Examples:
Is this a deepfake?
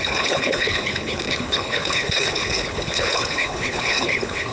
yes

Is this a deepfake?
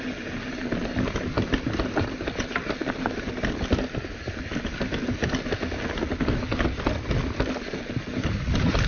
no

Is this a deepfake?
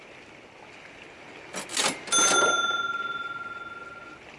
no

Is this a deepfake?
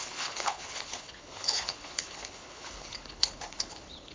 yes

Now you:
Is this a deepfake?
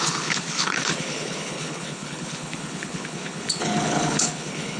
yes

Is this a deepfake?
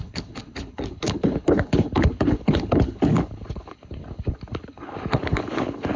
yes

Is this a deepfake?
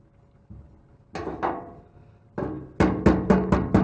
no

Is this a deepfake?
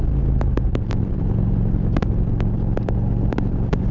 no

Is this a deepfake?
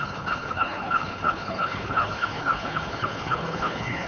yes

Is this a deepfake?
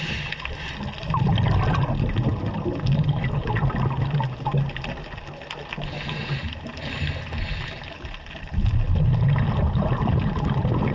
no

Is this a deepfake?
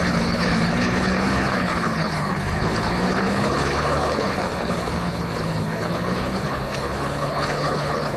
yes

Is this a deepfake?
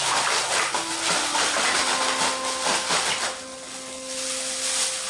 no